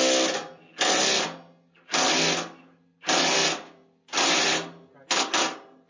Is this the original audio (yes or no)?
yes